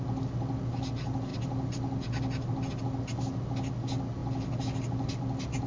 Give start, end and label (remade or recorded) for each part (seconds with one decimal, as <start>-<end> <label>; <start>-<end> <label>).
0.0-5.7 recorded